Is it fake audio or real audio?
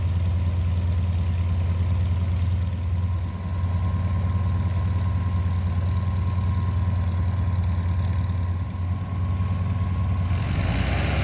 real